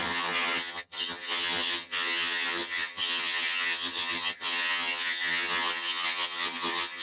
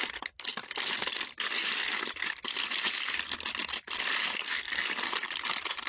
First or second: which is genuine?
second